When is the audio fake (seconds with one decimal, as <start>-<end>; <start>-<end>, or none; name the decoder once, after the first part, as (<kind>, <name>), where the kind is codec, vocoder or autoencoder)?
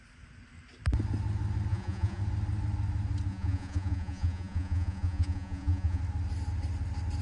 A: 1.7-2.2 (vocoder, Vocos); 3.3-6.0